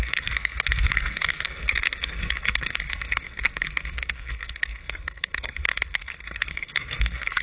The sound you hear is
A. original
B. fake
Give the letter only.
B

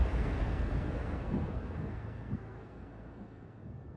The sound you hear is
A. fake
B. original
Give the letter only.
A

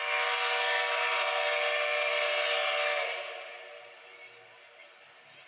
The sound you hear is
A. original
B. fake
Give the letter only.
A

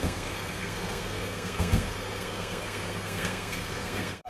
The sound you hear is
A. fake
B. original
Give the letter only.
A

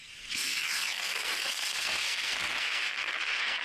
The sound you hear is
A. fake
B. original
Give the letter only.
A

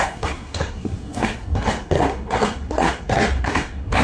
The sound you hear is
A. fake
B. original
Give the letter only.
A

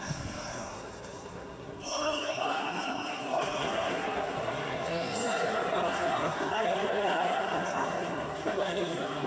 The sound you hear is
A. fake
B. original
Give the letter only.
A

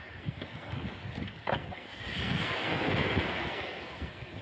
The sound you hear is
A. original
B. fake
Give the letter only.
B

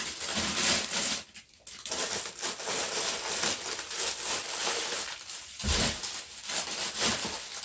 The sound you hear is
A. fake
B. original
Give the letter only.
B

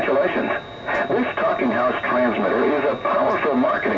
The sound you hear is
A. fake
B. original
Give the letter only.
B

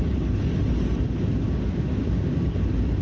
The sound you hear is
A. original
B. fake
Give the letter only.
A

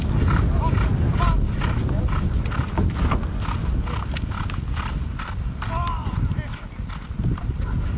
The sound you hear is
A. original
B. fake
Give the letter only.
A